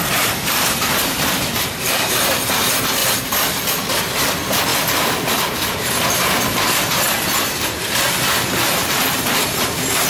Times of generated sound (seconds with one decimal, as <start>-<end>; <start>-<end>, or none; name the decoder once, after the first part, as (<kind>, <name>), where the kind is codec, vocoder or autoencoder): 0.0-3.0 (vocoder, BigVGAN v2); 4.0-10.1